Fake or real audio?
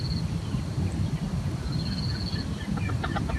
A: real